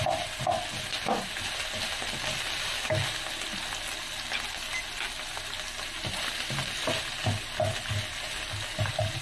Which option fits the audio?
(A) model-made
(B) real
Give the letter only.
B